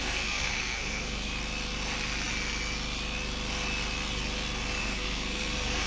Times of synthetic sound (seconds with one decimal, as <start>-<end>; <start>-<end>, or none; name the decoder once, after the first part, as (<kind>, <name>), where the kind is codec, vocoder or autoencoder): 0.0-1.3 (codec, SNAC); 4.8-5.9